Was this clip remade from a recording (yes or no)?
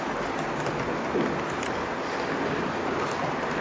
no